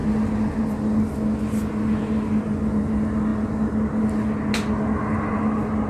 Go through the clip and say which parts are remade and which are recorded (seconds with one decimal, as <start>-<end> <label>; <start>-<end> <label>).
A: 0.0-5.9 recorded